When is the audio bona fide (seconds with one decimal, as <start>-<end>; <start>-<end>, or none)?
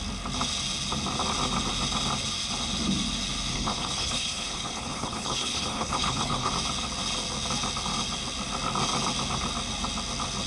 0.0-3.5; 6.5-10.5